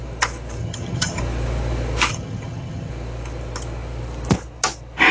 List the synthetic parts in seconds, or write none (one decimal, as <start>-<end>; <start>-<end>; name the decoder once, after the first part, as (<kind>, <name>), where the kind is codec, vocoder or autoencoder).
0.6-1.2 (vocoder, HiFi-GAN); 2.1-2.9

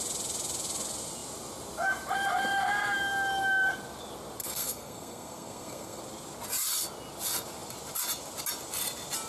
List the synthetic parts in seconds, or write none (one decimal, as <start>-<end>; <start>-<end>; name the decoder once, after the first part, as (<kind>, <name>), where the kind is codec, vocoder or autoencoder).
4.4-6.0 (codec, SNAC)

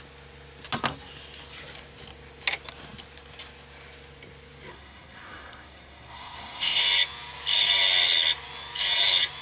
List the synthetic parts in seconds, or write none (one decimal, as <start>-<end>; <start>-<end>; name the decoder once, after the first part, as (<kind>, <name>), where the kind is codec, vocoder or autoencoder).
4.7-6.8 (codec, SNAC)

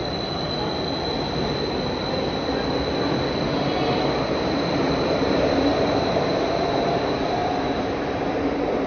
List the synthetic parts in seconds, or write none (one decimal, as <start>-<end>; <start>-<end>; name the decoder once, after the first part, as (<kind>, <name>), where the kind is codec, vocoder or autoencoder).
5.0-8.9 (vocoder, BigVGAN v2)

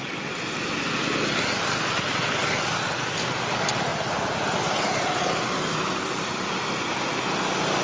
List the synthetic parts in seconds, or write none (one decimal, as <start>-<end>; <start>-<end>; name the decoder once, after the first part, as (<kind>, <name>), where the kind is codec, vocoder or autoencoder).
3.9-6.5 (vocoder, BigVGAN v2)

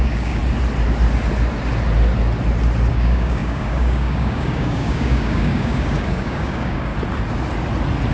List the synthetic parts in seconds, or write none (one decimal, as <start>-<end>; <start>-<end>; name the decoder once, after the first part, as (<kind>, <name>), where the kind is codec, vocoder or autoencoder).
0.0-0.4 (codec, DAC); 2.9-6.9